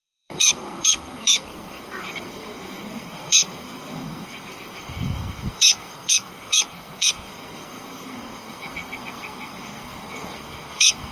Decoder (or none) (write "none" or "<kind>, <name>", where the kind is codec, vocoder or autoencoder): codec, SNAC